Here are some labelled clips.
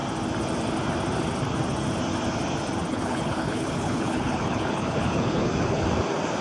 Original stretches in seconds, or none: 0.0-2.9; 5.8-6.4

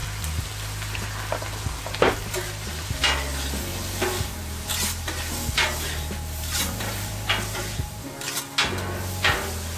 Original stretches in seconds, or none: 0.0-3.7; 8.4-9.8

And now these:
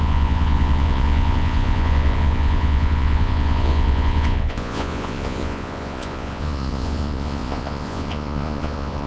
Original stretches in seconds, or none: none

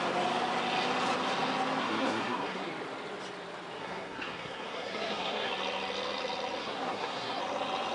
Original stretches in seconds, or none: 0.0-1.8; 2.7-3.8; 5.5-6.6; 7.4-7.9

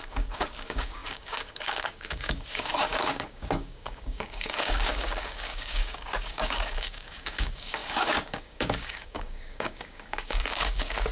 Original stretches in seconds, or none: none

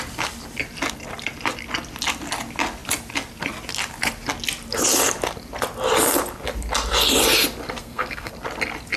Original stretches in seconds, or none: 0.0-7.8; 8.3-9.0